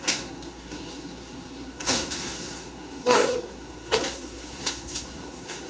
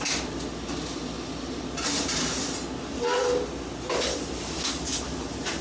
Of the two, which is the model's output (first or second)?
first